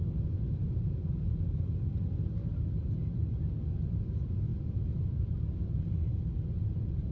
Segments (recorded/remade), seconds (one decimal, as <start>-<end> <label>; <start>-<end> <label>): 0.0-0.6 recorded; 0.6-1.8 remade; 1.8-7.1 recorded